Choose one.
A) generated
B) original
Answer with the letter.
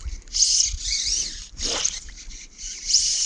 B